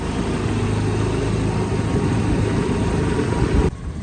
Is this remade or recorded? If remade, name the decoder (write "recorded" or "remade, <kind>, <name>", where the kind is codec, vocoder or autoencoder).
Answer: recorded